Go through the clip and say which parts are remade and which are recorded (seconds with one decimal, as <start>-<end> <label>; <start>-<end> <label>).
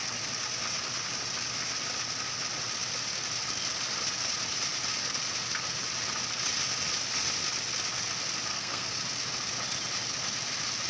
0.0-8.5 recorded; 8.5-9.0 remade; 9.0-10.9 recorded